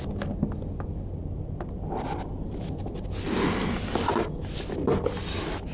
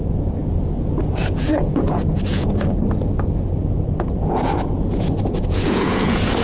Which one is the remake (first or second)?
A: second